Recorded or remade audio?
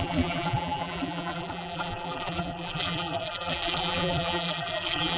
remade